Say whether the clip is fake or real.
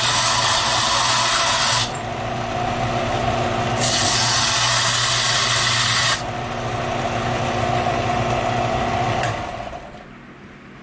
real